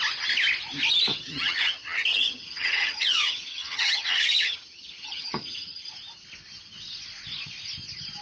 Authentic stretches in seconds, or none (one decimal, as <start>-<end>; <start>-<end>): 0.0-1.1; 5.9-8.2

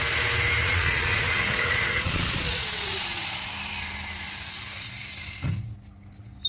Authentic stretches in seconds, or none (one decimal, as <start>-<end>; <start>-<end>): 0.0-0.6; 3.5-6.5

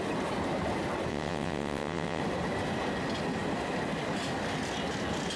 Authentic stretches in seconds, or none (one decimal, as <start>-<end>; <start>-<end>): 0.0-1.1; 2.2-5.4

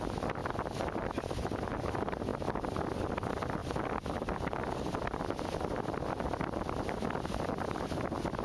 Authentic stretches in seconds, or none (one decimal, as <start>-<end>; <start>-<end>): 0.0-8.4

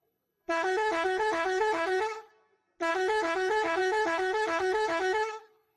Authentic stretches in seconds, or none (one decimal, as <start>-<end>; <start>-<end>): 2.3-2.9

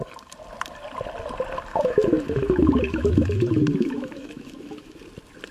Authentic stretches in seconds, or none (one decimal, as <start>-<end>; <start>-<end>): 0.0-1.7; 5.0-5.5